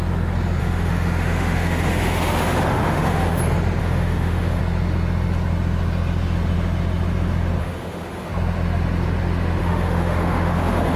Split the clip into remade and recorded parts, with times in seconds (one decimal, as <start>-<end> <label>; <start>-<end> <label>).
0.0-0.6 recorded; 0.6-3.4 remade; 3.4-3.8 recorded; 3.8-4.6 remade; 4.6-7.6 recorded; 7.6-8.3 remade; 8.3-9.6 recorded; 9.6-11.0 remade